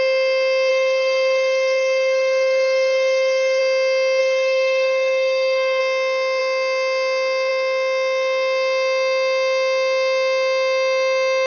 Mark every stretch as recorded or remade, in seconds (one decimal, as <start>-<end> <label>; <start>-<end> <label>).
0.0-0.7 recorded; 0.7-3.6 remade; 3.6-4.2 recorded; 4.2-5.8 remade; 5.8-11.5 recorded